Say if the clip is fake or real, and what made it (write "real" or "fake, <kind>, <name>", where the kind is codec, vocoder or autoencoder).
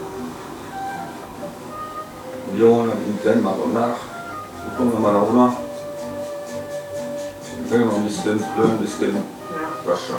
fake, codec, DAC